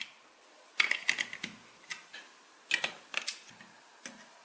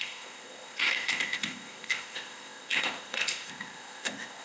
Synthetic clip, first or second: second